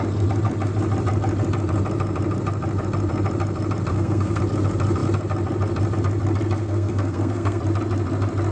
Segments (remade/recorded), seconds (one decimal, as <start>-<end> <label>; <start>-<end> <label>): 0.0-3.9 recorded; 3.9-4.4 remade; 4.4-6.6 recorded; 6.6-7.6 remade; 7.6-8.5 recorded